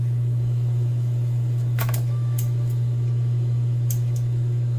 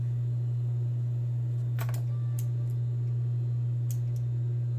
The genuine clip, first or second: second